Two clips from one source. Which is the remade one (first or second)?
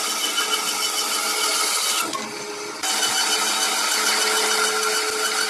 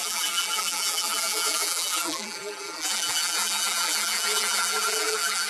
second